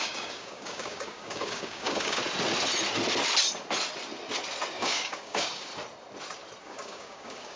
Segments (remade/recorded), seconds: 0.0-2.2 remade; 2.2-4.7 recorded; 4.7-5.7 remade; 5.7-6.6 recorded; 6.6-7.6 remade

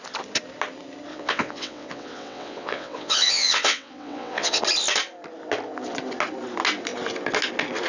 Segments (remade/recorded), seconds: 0.0-1.1 recorded; 1.1-4.6 remade; 4.6-7.9 recorded

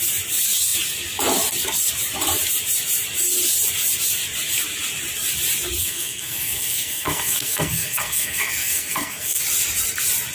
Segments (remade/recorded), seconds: 0.0-5.8 recorded; 5.8-9.4 remade; 9.4-10.3 recorded